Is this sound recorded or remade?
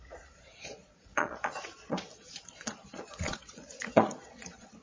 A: remade